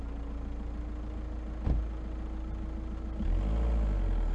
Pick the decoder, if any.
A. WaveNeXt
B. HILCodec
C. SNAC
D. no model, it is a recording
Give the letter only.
D